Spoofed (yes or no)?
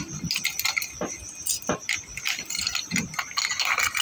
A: no